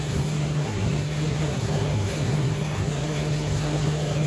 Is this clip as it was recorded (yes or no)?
no